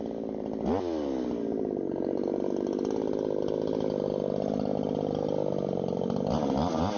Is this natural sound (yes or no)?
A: yes